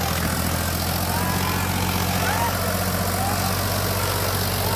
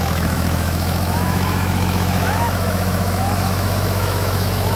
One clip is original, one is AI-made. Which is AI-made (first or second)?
second